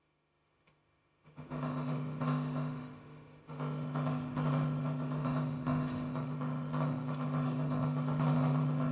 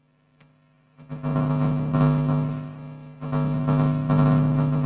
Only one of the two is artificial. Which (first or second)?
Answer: first